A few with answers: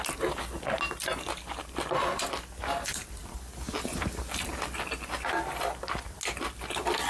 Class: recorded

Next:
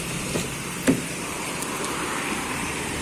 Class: remade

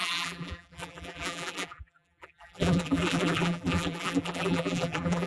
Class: remade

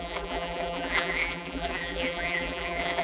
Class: remade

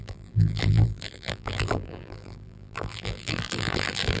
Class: remade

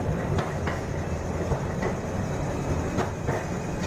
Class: recorded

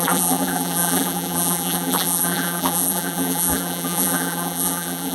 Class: remade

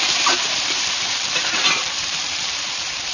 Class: remade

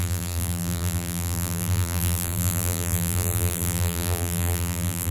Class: remade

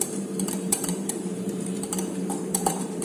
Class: remade